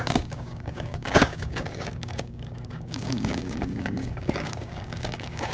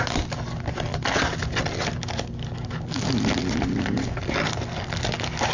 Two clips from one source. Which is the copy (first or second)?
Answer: first